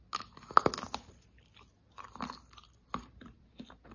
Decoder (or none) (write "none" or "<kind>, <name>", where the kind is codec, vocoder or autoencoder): none